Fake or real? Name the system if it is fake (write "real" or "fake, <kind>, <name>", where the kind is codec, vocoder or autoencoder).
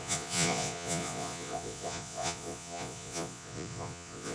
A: fake, vocoder, Vocos